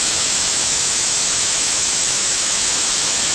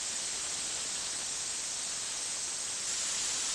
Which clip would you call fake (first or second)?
first